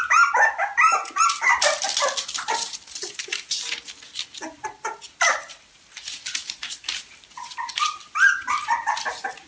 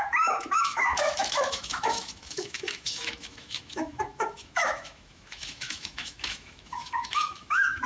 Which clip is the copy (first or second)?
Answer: second